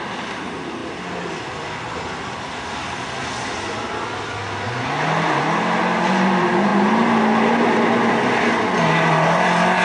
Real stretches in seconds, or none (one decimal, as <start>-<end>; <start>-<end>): 0.0-9.8